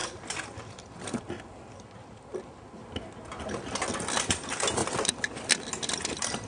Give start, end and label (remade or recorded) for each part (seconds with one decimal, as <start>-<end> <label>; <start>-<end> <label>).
0.0-2.8 remade; 2.8-4.3 recorded; 4.3-4.8 remade; 4.8-5.9 recorded; 5.9-6.5 remade